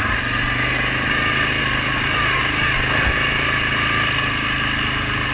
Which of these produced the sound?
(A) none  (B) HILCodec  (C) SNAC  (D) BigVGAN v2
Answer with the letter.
A